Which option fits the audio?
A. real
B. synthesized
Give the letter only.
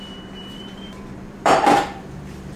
B